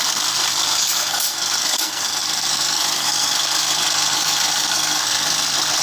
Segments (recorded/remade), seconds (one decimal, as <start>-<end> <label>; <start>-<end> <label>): 0.0-5.8 remade